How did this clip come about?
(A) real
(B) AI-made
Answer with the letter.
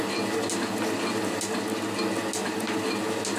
A